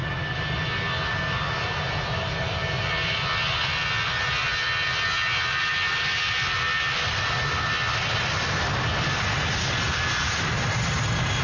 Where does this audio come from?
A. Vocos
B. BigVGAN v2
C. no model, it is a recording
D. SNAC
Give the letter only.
C